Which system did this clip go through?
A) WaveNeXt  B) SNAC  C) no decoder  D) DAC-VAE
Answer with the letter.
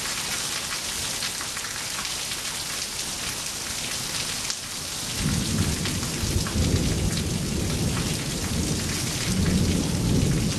C